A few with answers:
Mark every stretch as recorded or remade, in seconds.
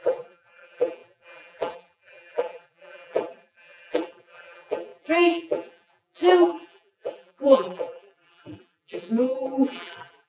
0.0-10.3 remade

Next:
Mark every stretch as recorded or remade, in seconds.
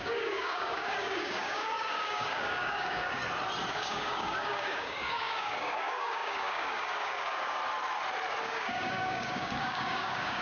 0.0-3.2 remade; 3.2-3.7 recorded; 3.7-7.6 remade; 7.6-8.4 recorded; 8.4-10.4 remade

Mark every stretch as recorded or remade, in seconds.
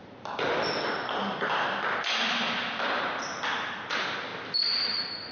0.0-5.3 recorded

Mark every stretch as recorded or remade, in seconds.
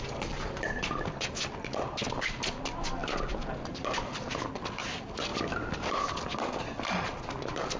0.0-5.3 recorded; 5.3-5.9 remade; 5.9-7.8 recorded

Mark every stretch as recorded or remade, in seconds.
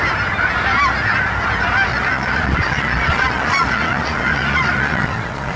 0.0-1.9 recorded; 1.9-5.6 remade